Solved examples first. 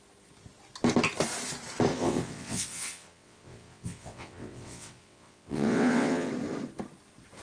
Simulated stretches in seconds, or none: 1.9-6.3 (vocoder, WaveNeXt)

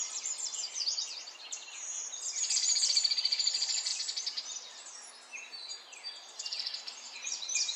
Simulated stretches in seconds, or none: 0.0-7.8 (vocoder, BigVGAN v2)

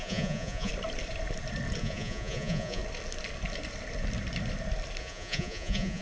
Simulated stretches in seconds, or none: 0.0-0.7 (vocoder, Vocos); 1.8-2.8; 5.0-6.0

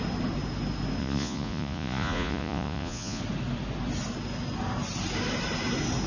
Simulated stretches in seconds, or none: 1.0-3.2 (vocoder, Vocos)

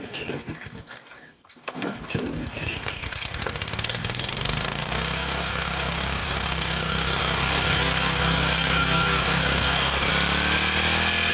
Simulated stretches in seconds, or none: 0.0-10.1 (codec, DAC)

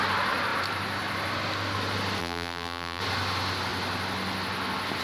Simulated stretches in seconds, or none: 2.2-3.0 (vocoder, BigVGAN v2)